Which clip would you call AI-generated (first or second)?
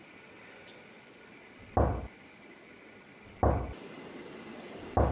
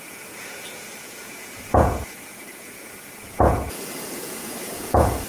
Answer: second